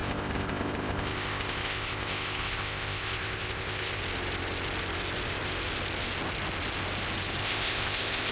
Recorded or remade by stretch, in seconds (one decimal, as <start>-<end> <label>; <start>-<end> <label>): 0.0-4.0 remade; 4.0-7.4 recorded; 7.4-8.3 remade